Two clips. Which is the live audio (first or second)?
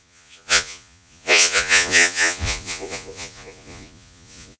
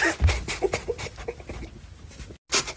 second